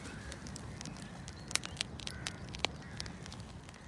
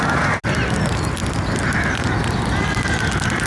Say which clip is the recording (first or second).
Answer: second